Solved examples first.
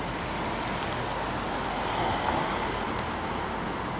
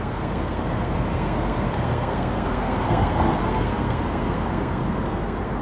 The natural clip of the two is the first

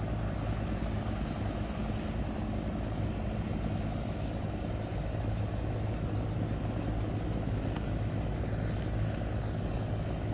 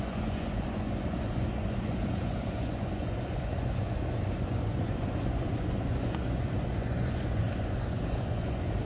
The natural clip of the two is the first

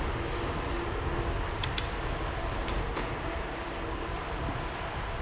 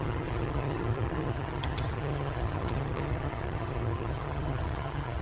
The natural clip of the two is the first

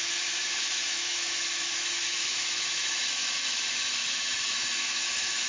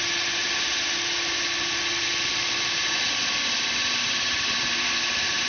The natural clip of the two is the second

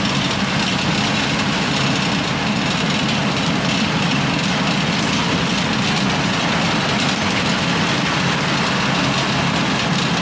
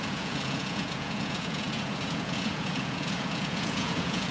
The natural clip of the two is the first